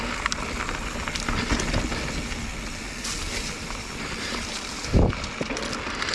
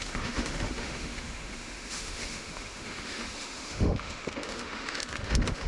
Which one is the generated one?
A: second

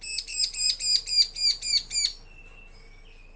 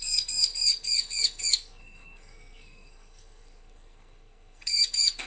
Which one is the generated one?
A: second